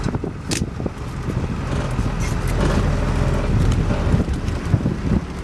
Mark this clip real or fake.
real